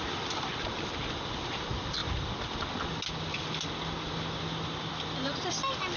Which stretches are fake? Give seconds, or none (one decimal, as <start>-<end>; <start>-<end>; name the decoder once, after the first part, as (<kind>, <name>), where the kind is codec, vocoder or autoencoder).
none